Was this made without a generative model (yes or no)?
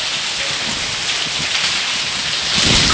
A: yes